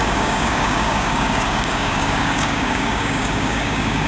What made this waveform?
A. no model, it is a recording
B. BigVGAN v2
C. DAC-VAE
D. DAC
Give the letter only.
D